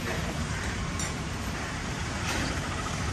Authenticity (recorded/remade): remade